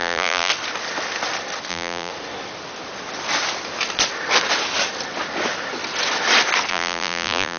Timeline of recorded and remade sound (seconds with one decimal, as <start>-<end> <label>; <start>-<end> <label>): 0.0-0.5 remade; 0.5-1.7 recorded; 1.7-2.1 remade; 2.1-6.7 recorded; 6.7-7.6 remade